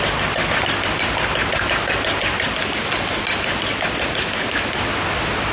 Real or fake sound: real